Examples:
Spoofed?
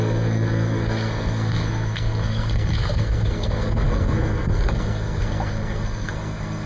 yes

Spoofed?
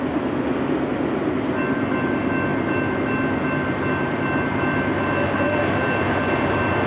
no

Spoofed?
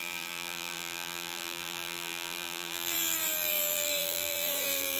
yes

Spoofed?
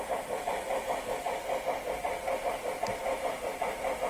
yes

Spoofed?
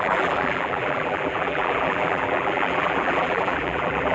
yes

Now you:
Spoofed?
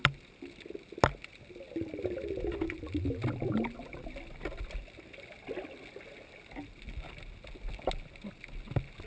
no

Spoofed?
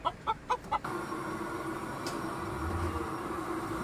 no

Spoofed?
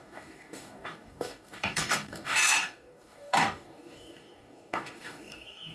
yes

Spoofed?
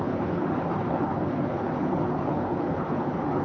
yes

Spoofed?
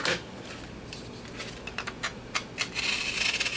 no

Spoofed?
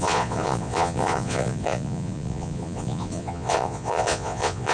yes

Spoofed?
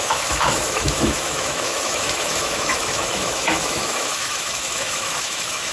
yes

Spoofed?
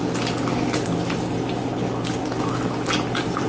no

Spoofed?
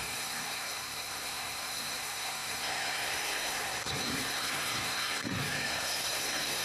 yes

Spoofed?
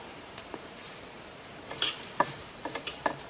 yes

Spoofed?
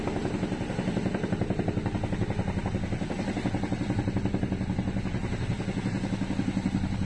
no